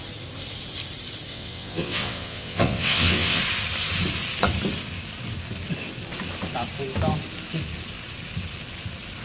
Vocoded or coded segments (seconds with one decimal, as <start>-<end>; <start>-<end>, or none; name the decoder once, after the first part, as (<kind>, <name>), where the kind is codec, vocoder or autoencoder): 1.3-3.4 (vocoder, WaveNeXt)